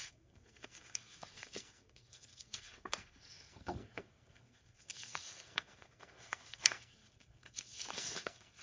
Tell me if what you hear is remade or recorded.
remade